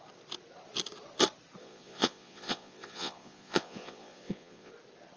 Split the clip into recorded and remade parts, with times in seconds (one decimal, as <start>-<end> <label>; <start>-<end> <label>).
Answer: 0.0-1.6 recorded; 1.6-4.7 remade; 4.7-5.2 recorded